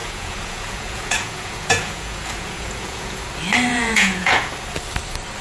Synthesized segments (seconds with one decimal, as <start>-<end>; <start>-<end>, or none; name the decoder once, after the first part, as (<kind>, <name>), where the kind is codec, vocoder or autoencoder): 0.0-3.2 (vocoder, Vocos); 3.7-4.5